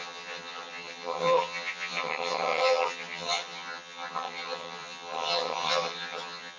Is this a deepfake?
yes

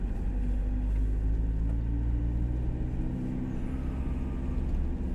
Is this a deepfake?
no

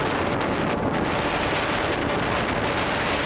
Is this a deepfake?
no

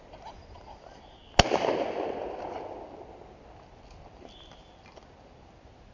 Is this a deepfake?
no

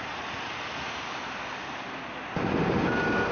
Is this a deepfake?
no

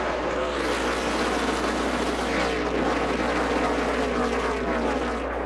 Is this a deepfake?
no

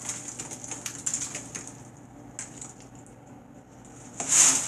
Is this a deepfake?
no